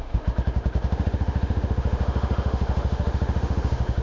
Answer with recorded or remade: remade